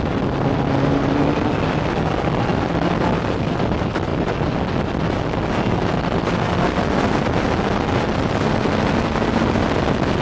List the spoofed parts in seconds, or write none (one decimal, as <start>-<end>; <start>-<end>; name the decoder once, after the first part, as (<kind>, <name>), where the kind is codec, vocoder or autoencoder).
none